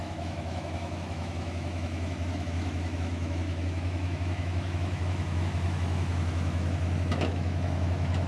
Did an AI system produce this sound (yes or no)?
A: yes